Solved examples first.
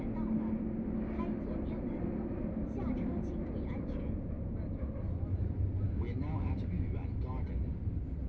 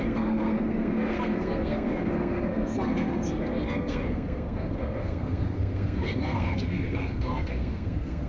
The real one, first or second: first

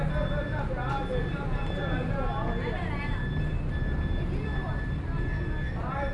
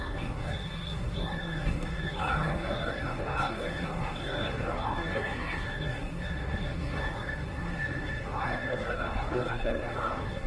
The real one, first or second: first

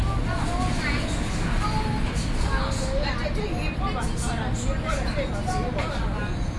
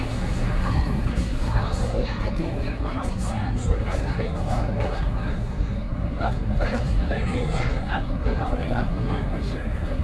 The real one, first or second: first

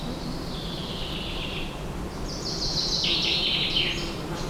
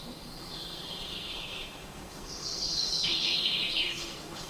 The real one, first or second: first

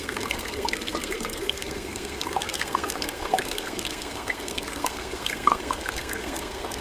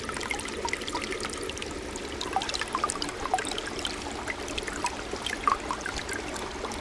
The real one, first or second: second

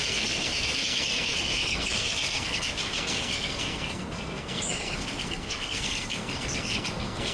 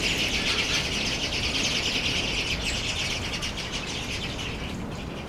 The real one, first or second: second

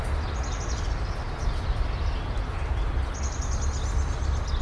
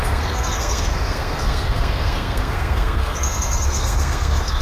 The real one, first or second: first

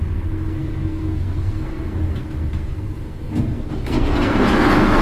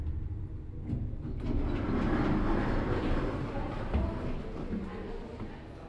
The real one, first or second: second